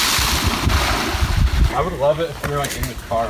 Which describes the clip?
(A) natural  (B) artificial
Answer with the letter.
A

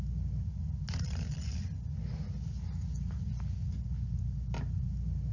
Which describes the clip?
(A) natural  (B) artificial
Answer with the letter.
A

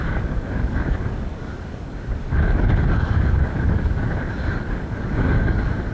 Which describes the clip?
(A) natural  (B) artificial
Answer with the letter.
B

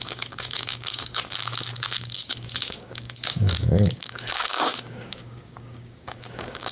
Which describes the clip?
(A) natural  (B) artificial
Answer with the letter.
B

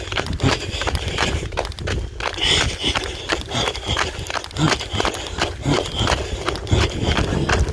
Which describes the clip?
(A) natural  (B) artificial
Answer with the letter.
A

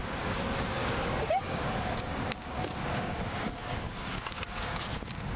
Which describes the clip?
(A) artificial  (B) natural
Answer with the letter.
A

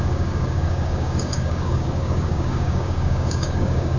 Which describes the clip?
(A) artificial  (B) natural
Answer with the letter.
A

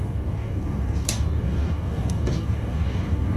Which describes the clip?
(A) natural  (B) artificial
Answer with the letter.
B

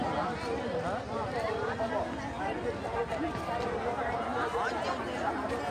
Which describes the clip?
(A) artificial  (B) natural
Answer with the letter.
B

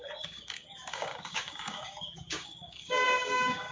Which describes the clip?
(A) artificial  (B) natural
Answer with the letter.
A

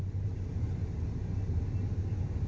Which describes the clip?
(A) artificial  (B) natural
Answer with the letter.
B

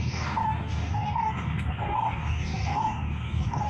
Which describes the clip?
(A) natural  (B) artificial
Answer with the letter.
B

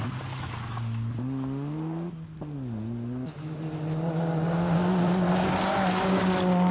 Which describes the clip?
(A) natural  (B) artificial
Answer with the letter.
A